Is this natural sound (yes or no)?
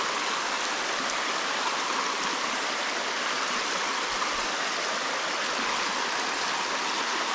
yes